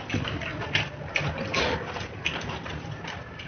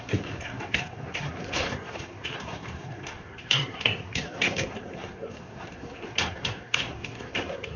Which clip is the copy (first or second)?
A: second